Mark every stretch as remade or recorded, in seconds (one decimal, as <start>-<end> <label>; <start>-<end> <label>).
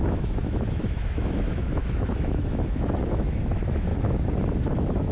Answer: 0.0-3.9 remade; 3.9-4.6 recorded; 4.6-5.1 remade